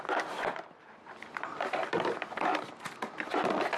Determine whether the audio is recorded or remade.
remade